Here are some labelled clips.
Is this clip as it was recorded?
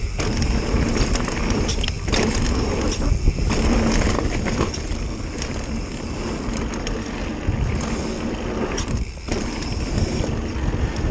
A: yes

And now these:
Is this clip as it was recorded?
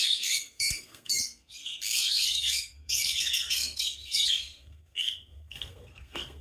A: no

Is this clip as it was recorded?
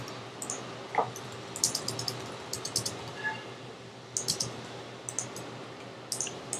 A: yes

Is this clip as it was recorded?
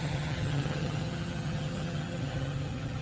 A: no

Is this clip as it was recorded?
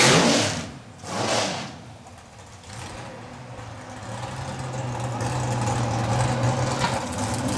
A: yes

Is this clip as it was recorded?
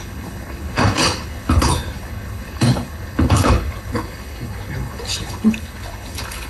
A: no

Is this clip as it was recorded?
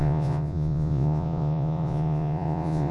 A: no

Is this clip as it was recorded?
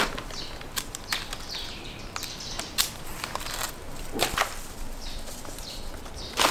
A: no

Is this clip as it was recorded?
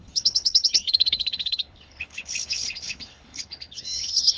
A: no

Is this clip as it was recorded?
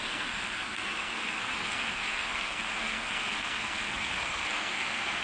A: no